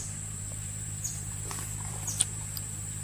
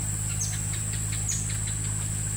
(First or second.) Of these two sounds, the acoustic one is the second